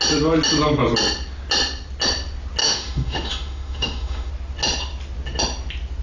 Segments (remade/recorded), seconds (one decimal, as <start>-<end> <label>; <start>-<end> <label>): 0.0-2.6 recorded; 2.6-4.3 remade; 4.3-6.0 recorded